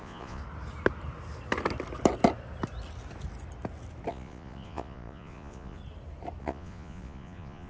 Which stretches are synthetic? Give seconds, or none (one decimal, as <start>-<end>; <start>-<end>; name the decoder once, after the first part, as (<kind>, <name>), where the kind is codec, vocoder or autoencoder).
0.0-0.4 (vocoder, Vocos); 4.1-5.8; 6.4-7.7